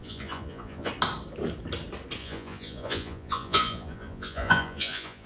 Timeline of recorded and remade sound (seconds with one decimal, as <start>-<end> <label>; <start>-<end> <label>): 0.0-0.9 remade; 0.9-2.2 recorded; 2.2-5.3 remade